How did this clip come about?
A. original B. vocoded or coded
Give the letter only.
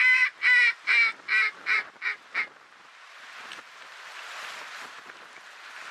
A